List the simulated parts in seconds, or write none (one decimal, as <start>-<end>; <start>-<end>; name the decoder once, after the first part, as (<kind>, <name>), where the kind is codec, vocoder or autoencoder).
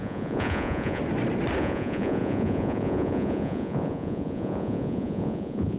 0.0-1.0 (vocoder, Vocos); 1.6-5.8